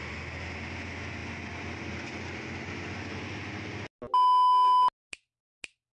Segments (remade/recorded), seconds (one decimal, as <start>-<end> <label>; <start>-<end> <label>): 0.0-6.0 recorded